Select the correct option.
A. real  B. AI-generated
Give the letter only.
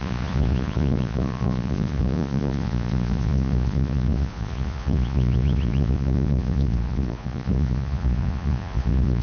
B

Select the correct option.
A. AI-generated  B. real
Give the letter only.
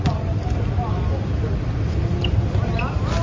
B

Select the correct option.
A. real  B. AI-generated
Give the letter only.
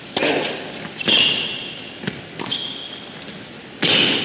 A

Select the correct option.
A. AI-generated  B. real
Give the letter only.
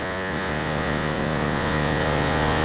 A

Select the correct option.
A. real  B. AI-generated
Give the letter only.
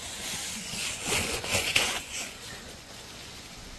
B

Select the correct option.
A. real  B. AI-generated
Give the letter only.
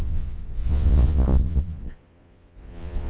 B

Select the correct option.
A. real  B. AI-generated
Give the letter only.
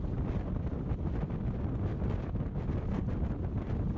A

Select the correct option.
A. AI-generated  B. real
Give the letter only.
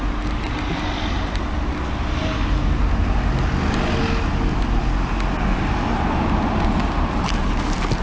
B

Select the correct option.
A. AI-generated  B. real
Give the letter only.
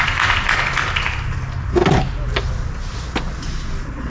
B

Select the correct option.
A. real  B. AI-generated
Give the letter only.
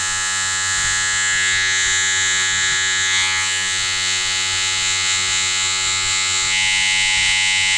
B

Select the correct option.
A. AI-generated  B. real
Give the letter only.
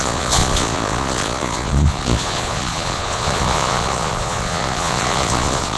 A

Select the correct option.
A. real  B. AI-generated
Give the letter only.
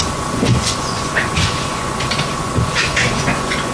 B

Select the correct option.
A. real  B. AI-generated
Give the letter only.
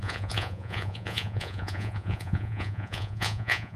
B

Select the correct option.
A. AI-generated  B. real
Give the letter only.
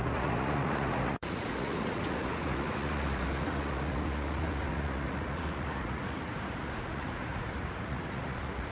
A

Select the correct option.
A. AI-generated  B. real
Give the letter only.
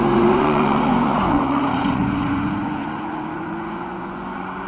A